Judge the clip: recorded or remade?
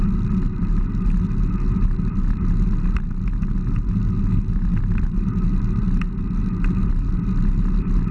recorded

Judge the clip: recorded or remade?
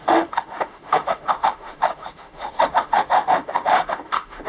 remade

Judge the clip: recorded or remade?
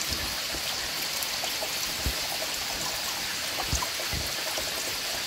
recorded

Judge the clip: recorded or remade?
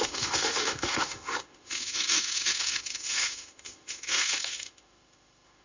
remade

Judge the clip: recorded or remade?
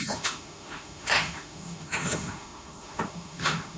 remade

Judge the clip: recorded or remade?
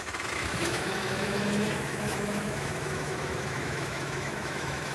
remade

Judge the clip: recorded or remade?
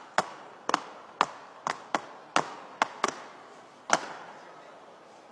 recorded